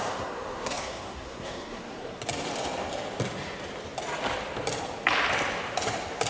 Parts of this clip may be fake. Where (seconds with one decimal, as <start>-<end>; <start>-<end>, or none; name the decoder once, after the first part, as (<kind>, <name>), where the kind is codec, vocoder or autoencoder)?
0.0-2.2 (codec, SNAC)